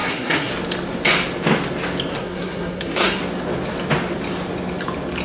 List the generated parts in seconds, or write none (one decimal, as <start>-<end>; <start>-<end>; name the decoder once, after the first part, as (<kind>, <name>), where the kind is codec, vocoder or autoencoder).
0.0-0.5 (codec, SNAC); 2.1-3.2